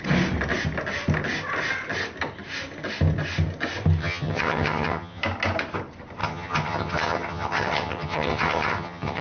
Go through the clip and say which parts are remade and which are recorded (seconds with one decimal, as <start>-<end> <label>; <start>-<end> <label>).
0.0-4.0 recorded; 4.0-5.2 remade; 5.2-6.2 recorded; 6.2-9.2 remade